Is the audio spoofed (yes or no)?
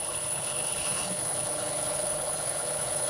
yes